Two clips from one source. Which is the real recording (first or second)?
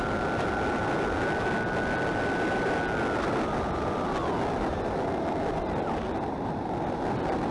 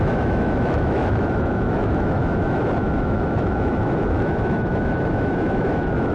first